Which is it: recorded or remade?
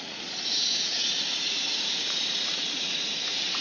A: remade